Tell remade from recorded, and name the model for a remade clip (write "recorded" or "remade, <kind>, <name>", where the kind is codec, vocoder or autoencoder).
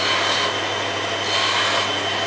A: recorded